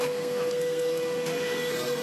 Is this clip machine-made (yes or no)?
yes